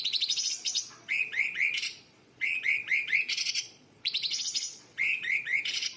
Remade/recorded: remade